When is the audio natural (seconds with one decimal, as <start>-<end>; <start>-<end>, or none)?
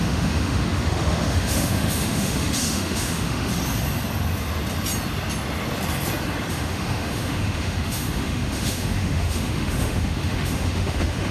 3.5-6.5